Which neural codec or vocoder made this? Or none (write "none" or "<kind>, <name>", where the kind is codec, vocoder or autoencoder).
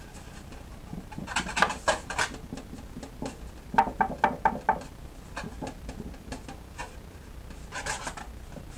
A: none